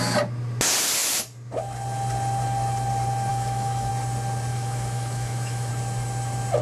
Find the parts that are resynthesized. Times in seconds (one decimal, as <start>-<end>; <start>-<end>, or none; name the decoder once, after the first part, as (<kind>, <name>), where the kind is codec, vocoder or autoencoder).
3.3-3.9 (autoencoder, DAC-VAE); 4.5-5.7